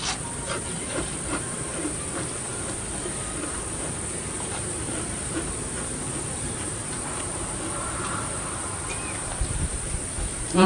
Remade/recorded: remade